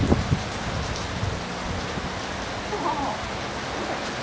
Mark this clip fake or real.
real